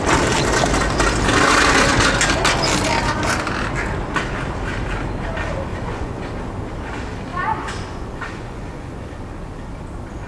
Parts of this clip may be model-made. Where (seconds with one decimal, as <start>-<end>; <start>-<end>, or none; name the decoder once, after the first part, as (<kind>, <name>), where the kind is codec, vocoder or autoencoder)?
5.7-6.3 (vocoder, Vocos); 7.3-9.1